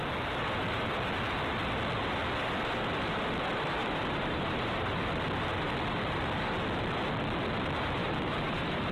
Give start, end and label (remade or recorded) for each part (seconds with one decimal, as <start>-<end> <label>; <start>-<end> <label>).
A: 0.0-3.8 recorded; 3.8-5.0 remade; 5.0-8.0 recorded; 8.0-8.9 remade